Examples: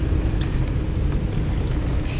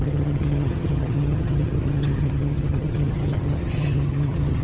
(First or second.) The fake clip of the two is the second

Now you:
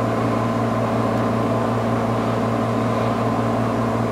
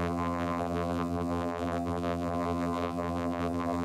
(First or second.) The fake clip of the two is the second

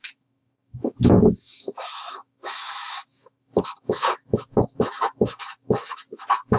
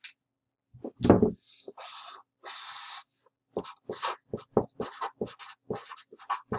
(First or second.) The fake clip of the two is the first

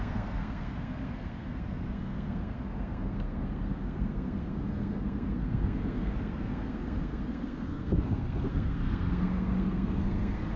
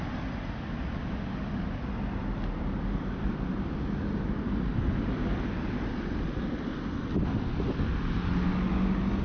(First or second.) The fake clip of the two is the first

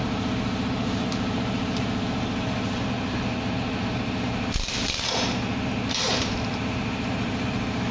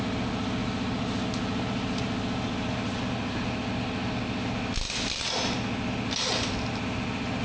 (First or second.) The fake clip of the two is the first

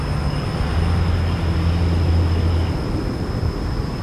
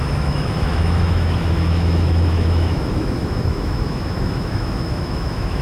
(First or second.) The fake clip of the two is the second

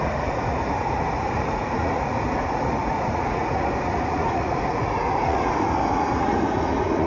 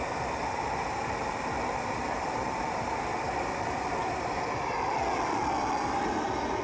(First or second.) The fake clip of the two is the first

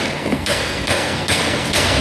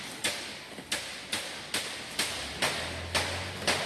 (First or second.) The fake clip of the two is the first